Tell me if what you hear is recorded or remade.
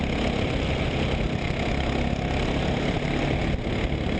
recorded